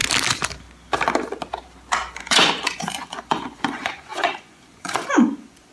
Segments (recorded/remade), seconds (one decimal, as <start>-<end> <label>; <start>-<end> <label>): 0.0-2.2 recorded; 2.2-5.7 remade